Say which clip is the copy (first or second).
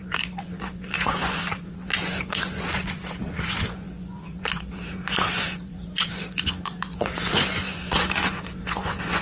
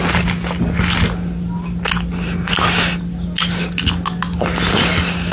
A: first